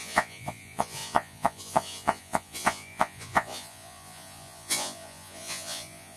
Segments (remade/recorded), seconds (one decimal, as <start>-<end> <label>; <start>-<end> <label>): 0.0-6.2 remade